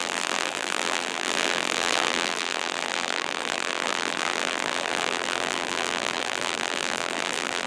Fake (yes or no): yes